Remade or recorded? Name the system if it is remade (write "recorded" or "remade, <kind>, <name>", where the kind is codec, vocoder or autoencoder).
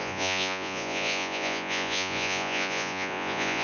remade, vocoder, Vocos